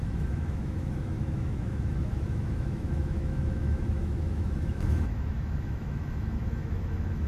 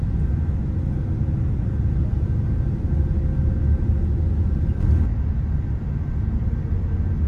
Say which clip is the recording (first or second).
second